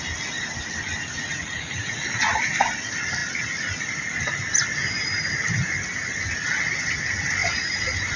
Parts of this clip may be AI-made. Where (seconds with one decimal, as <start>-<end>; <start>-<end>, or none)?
1.3-2.3